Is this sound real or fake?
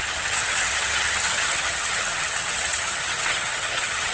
fake